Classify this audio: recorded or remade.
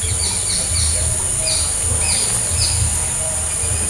recorded